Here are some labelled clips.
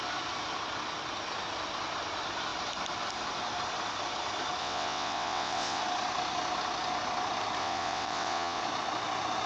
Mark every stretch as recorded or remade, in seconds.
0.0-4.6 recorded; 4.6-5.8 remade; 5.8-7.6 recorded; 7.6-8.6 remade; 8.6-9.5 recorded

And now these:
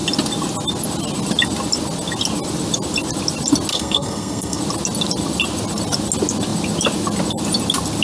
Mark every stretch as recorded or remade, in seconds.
0.0-3.7 recorded; 3.7-4.6 remade; 4.6-8.0 recorded

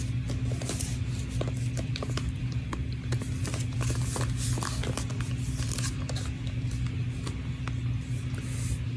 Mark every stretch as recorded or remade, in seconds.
0.0-2.4 recorded; 2.4-3.1 remade; 3.1-9.0 recorded

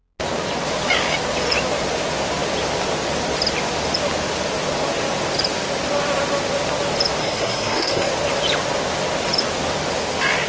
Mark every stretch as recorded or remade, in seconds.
0.0-7.2 recorded; 7.2-8.1 remade; 8.1-10.5 recorded